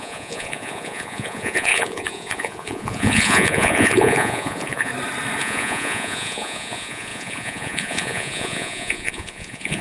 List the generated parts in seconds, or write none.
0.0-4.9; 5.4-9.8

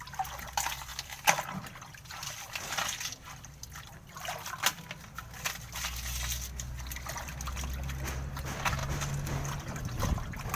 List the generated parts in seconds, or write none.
0.9-2.7

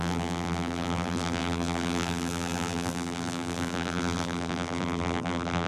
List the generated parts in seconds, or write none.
0.0-5.7

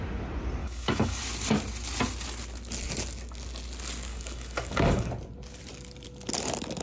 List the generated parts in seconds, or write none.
0.6-1.2; 4.1-5.1

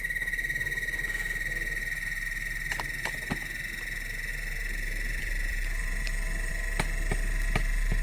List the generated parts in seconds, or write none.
4.3-6.5

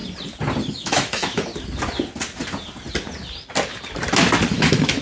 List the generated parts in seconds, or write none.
0.7-1.5; 4.5-5.0